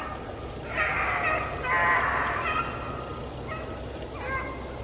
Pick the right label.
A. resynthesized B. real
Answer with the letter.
B